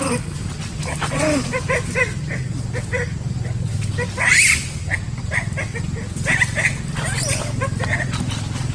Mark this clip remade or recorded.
recorded